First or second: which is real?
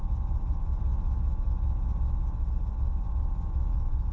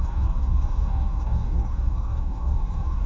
first